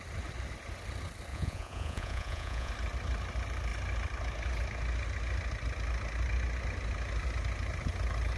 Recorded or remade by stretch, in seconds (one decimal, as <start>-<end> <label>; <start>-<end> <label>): 0.0-1.3 recorded; 1.3-2.7 remade; 2.7-8.4 recorded